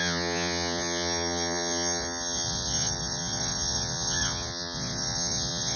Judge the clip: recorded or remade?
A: remade